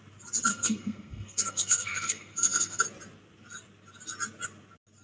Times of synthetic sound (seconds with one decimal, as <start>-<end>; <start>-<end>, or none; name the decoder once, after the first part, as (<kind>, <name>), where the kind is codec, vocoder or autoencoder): 0.5-2.8 (codec, SNAC)